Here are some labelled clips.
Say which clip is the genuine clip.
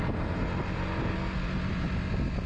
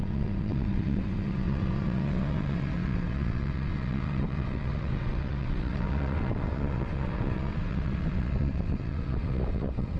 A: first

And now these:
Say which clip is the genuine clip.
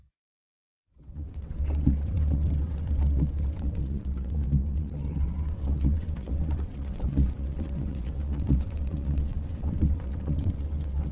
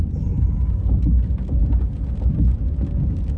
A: second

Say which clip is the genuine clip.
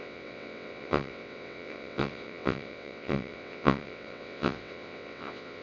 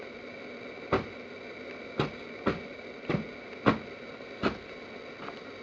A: second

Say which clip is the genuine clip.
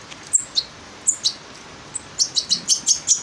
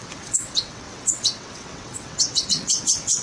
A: first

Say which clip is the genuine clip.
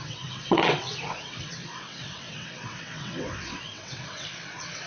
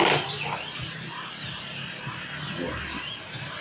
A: second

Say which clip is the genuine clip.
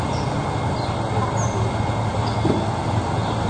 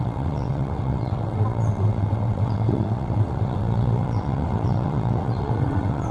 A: first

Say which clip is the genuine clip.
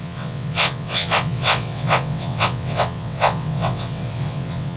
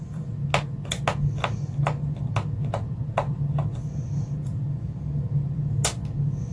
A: second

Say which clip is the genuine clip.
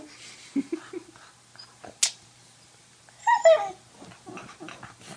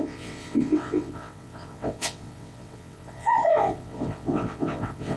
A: first